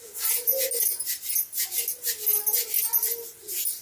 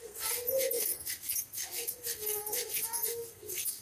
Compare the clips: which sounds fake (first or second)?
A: second